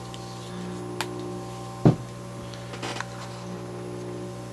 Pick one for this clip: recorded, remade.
recorded